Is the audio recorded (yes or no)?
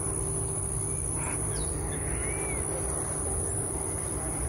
yes